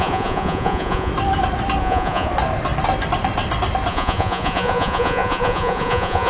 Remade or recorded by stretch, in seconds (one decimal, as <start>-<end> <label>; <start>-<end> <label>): 0.0-1.1 remade; 1.1-1.8 recorded; 1.8-2.3 remade; 2.3-3.9 recorded; 3.9-6.3 remade